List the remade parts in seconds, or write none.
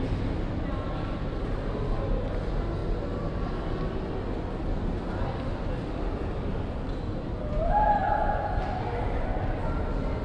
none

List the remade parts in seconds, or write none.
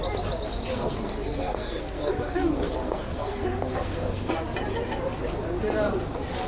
0.7-4.3 (codec, SNAC)